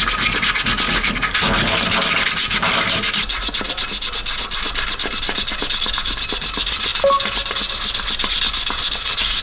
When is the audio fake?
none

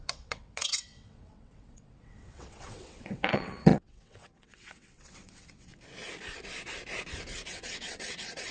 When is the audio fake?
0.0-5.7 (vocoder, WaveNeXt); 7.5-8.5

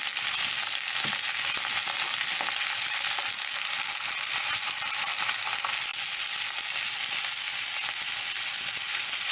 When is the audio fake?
none